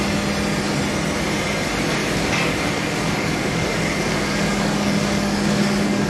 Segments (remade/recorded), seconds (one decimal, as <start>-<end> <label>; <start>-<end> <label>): 0.0-2.0 recorded; 2.0-6.1 remade